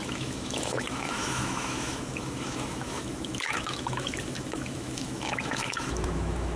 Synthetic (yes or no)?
yes